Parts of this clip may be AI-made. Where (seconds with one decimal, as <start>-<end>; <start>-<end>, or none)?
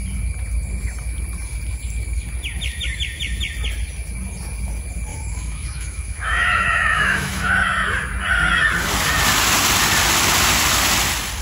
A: 5.1-7.5